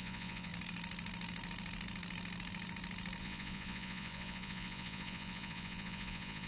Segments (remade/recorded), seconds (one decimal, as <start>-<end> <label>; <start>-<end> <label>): 0.0-0.5 remade; 0.5-3.2 recorded; 3.2-6.5 remade